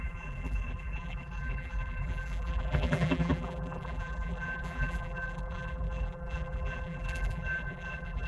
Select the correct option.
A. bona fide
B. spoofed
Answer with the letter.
B